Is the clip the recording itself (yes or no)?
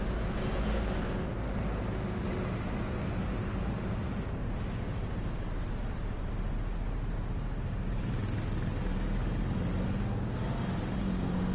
yes